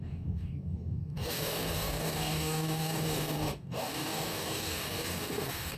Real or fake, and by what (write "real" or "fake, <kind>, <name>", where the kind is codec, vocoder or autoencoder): fake, codec, DAC